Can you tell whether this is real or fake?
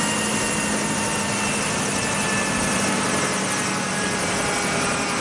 real